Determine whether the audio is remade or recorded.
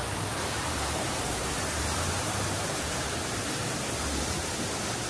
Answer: remade